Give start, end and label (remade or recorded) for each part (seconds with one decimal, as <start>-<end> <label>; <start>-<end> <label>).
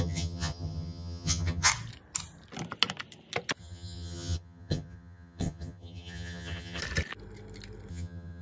0.0-1.7 remade; 1.7-3.6 recorded; 3.6-6.8 remade; 6.8-7.9 recorded; 7.9-8.4 remade